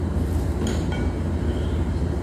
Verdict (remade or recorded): recorded